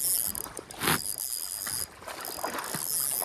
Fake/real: real